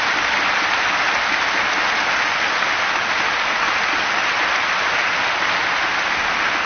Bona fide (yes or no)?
yes